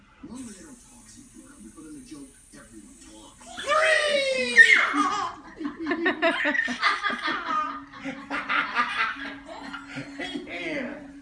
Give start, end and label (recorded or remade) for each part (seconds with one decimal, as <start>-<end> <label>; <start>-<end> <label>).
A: 0.0-11.2 recorded